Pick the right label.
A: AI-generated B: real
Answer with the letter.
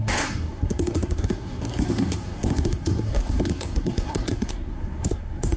A